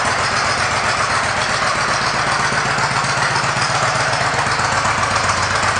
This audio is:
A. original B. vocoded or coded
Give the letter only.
A